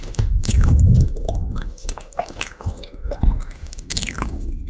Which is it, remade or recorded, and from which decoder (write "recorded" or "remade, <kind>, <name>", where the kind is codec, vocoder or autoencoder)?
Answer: remade, autoencoder, DAC-VAE